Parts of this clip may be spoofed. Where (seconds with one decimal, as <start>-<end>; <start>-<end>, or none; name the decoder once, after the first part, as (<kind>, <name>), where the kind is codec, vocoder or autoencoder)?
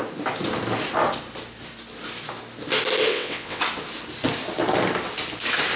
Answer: 3.1-3.6 (vocoder, WaveNeXt)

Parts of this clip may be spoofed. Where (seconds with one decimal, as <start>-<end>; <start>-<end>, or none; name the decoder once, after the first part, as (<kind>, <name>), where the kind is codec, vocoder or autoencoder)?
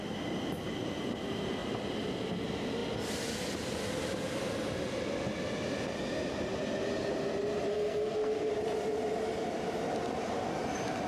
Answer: 7.7-8.5 (codec, SNAC)